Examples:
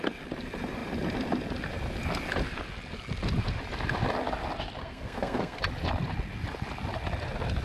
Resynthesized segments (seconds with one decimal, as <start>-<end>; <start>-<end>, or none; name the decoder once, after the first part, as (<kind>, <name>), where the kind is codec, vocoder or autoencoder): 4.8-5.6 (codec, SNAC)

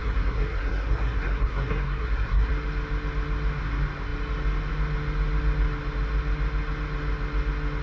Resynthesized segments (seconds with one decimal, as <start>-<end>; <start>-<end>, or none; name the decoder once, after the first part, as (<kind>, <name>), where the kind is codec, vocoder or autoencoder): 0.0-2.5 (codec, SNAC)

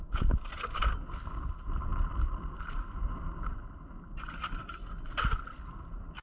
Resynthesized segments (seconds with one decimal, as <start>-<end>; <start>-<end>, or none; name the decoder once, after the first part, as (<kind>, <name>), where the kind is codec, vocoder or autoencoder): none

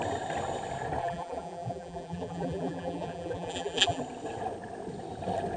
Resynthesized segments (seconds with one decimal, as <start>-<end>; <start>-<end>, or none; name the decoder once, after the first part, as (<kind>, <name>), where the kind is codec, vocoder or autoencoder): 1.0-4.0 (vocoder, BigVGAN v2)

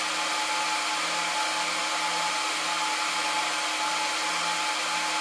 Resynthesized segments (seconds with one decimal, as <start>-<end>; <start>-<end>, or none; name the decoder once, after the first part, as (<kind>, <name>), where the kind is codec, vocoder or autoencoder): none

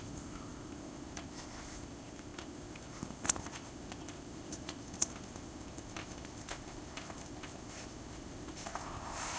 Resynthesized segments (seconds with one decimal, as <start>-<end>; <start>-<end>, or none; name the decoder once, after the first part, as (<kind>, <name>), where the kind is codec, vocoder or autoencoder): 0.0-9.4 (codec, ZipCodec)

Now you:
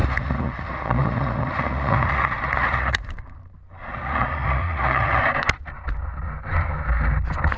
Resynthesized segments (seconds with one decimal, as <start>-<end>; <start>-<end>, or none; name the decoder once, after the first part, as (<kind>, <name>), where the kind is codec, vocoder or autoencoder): 0.0-3.2 (vocoder, Vocos); 3.8-5.2

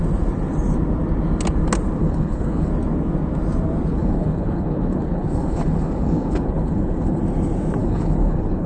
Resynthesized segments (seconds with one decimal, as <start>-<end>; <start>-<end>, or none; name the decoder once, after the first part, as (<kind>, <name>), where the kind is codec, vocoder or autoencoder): 2.0-2.7 (codec, HILCodec); 3.9-7.2; 7.8-8.7